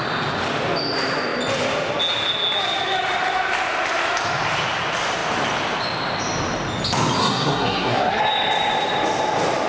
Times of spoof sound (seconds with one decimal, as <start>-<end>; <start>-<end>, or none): 7.2-8.2